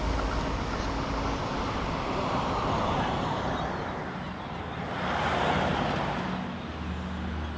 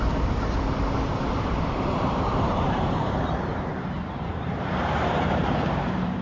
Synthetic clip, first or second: second